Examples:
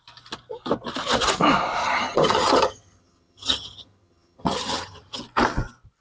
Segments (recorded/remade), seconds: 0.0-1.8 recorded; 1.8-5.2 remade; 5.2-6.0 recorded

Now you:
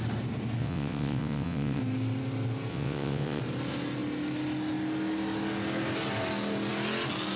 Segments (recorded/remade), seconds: 0.0-0.6 recorded; 0.6-1.8 remade; 1.8-2.7 recorded; 2.7-3.4 remade; 3.4-7.4 recorded

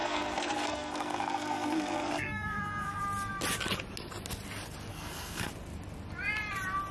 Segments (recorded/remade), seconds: 0.0-3.0 remade; 3.0-4.9 recorded; 4.9-5.5 remade; 5.5-6.9 recorded

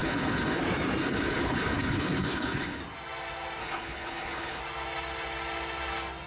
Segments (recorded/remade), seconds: 0.0-0.6 remade; 0.6-1.0 recorded; 1.0-2.8 remade; 2.8-3.6 recorded; 3.6-4.6 remade; 4.6-6.3 recorded

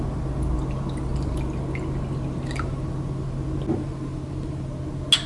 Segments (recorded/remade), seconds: 0.0-5.3 recorded